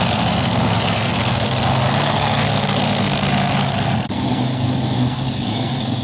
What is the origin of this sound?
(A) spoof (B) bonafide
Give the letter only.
A